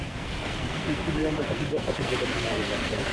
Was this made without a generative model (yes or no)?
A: no